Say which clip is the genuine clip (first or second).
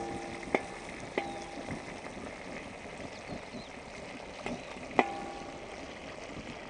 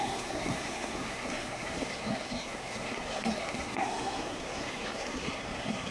first